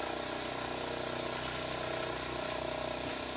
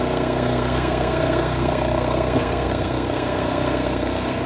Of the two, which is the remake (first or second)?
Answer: second